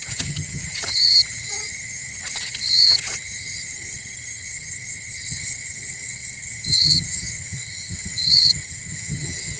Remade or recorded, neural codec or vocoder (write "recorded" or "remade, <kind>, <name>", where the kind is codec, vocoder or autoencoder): remade, vocoder, HiFi-GAN